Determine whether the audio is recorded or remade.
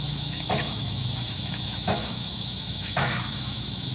remade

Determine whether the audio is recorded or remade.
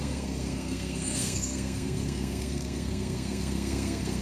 remade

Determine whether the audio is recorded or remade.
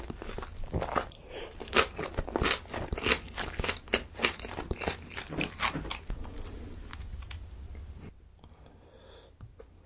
recorded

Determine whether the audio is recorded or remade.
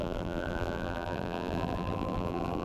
remade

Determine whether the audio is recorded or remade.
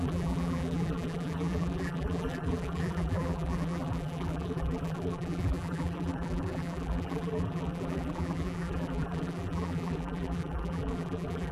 remade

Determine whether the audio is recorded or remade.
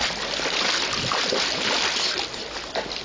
recorded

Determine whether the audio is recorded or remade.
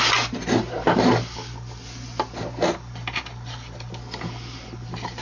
recorded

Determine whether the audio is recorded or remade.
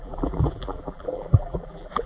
remade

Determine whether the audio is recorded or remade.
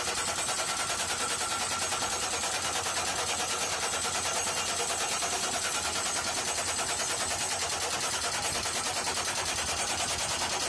recorded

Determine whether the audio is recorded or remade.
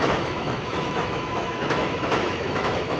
remade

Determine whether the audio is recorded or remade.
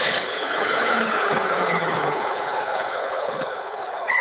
remade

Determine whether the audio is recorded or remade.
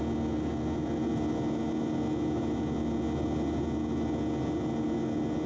recorded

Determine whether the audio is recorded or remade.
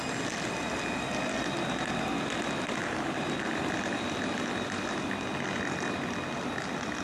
recorded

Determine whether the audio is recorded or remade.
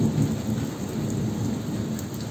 recorded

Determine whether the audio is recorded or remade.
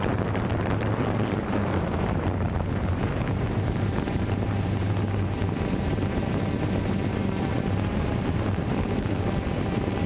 remade